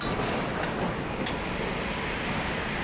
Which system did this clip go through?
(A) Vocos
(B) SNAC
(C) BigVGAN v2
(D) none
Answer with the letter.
D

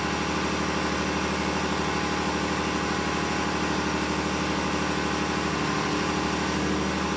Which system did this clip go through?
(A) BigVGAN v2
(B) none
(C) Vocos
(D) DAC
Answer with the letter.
B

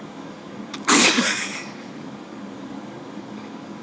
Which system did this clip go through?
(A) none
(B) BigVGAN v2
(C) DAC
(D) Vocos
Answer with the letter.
C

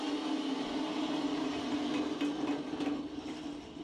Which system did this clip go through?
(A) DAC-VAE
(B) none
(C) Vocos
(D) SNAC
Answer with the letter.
B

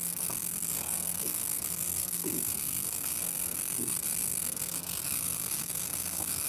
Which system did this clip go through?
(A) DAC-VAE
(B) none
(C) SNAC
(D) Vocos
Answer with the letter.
C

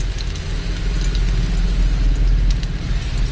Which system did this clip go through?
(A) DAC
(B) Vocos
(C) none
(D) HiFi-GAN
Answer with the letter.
C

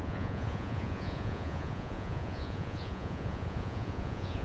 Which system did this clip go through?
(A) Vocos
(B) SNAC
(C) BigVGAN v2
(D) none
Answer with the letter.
A